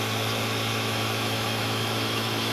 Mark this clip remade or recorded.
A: remade